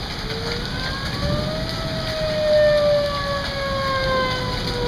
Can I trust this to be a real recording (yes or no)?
yes